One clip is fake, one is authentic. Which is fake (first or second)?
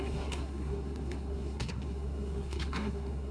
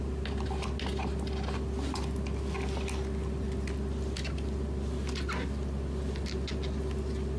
first